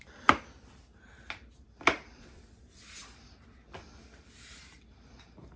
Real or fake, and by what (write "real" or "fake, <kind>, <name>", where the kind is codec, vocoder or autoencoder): real